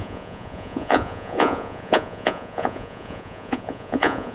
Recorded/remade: remade